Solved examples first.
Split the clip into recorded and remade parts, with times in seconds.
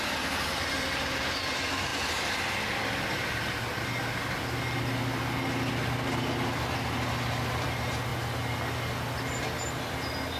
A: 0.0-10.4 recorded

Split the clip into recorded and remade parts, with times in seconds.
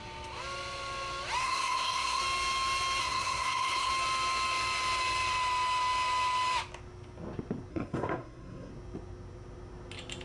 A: 0.0-1.4 recorded; 1.4-2.2 remade; 2.2-3.0 recorded; 3.0-3.9 remade; 3.9-7.7 recorded; 7.7-8.7 remade; 8.7-10.2 recorded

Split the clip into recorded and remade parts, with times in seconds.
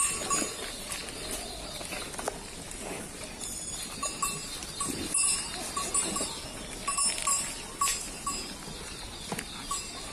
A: 0.0-10.1 recorded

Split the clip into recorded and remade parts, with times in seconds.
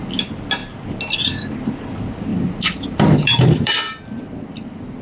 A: 0.0-2.3 recorded; 2.3-3.7 remade; 3.7-5.0 recorded